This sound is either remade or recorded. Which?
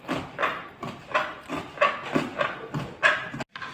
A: recorded